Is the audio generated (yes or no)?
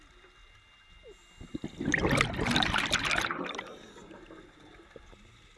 no